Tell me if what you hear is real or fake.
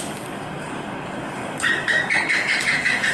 fake